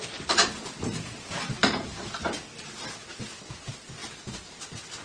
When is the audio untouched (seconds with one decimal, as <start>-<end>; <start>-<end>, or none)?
0.0-0.9; 2.1-4.0